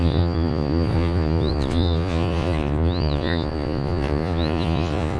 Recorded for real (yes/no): no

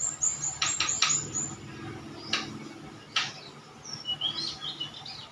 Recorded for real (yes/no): yes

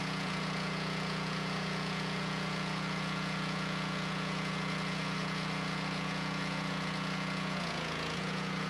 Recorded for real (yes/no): no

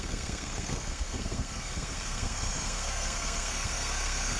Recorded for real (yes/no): no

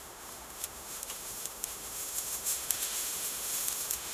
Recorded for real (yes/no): no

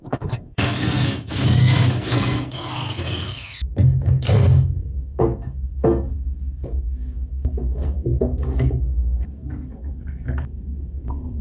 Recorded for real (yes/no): no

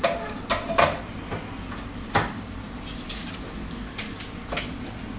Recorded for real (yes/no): no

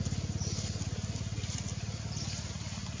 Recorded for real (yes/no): yes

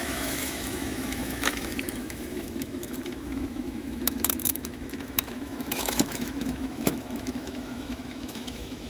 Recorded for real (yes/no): no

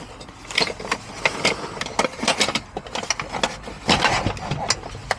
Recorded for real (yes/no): yes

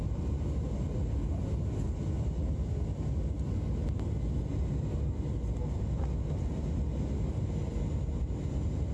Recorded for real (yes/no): yes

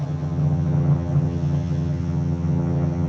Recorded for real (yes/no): no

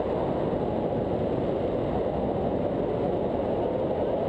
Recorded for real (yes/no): yes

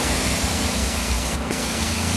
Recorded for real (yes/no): no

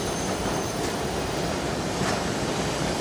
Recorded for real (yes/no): no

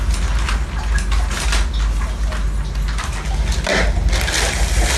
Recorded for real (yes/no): yes